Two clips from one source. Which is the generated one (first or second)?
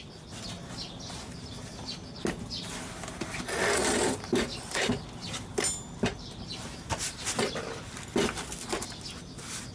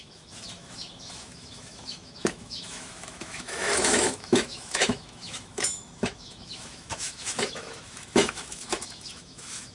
second